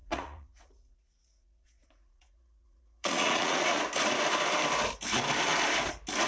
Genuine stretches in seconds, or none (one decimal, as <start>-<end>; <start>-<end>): 3.8-6.3